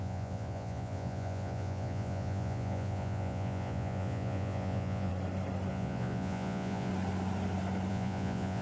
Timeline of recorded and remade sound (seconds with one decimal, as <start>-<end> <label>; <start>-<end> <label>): 0.0-5.1 remade; 5.1-5.7 recorded; 5.7-6.9 remade; 6.9-7.9 recorded; 7.9-8.6 remade